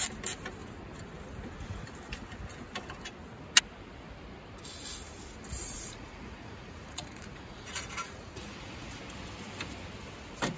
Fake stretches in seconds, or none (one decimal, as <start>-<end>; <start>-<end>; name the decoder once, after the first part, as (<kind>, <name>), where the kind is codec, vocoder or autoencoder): 5.6-9.0 (vocoder, Vocos)